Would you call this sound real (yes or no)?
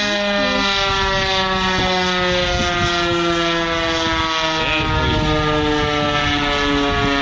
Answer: yes